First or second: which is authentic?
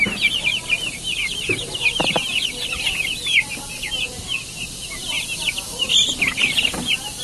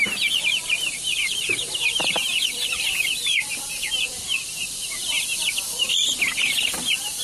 first